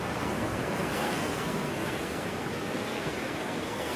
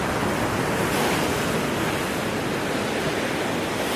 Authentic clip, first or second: second